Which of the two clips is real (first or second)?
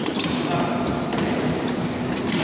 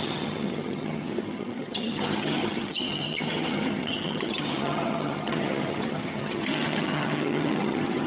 first